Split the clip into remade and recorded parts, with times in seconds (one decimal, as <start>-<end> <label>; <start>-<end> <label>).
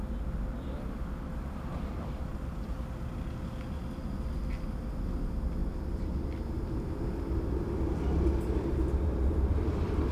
0.0-5.6 recorded; 5.6-6.4 remade; 6.4-10.1 recorded